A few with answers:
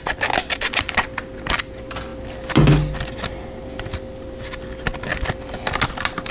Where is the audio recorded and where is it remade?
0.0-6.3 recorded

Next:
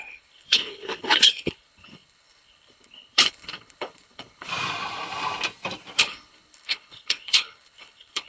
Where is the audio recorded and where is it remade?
0.0-4.5 remade; 4.5-6.0 recorded; 6.0-8.3 remade

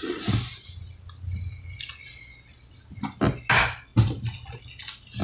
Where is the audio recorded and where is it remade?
0.0-5.2 recorded

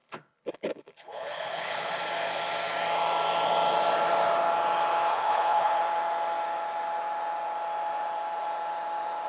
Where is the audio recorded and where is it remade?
0.0-2.0 remade; 2.0-5.1 recorded; 5.1-5.8 remade; 5.8-9.3 recorded

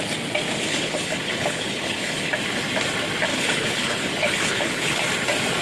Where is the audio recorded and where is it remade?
0.0-0.7 recorded; 0.7-2.3 remade; 2.3-3.3 recorded; 3.3-5.0 remade; 5.0-5.6 recorded

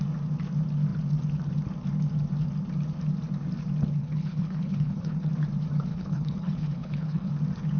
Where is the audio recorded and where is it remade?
0.0-4.0 recorded; 4.0-5.3 remade; 5.3-5.9 recorded; 5.9-7.3 remade; 7.3-7.8 recorded

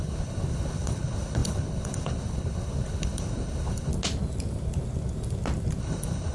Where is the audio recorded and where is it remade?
0.0-3.9 remade; 3.9-5.8 recorded; 5.8-6.3 remade

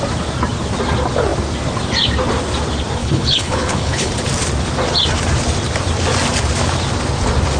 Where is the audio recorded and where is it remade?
0.0-3.0 recorded; 3.0-4.1 remade; 4.1-7.6 recorded